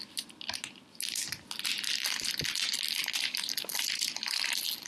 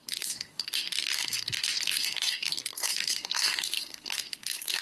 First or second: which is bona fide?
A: first